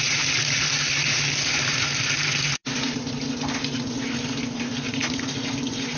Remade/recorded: recorded